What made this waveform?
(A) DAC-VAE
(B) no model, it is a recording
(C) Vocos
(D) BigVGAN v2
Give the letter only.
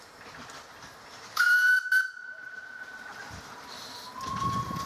B